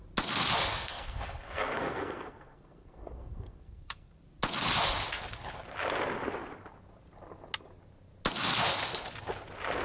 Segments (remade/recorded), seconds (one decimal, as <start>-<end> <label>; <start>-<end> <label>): 0.0-0.7 recorded; 0.7-4.2 remade; 4.2-9.8 recorded